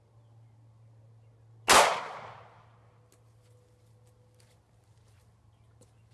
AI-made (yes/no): no